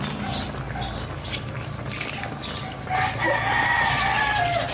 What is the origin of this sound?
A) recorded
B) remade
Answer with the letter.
A